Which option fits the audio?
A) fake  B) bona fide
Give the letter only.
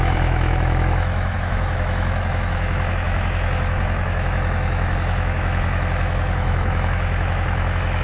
A